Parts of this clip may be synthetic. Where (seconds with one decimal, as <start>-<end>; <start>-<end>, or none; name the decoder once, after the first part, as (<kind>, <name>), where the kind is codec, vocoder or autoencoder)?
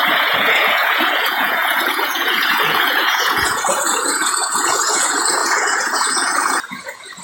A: 0.0-7.2 (vocoder, Vocos)